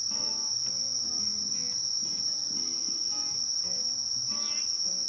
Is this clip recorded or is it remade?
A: recorded